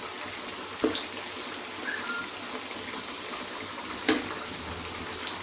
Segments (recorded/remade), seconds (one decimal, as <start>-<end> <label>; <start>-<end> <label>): 0.0-5.4 recorded